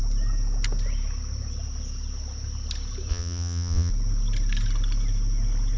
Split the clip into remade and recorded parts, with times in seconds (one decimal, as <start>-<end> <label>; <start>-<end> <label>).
0.0-3.1 recorded; 3.1-3.9 remade; 3.9-5.8 recorded